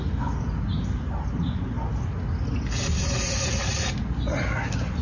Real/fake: real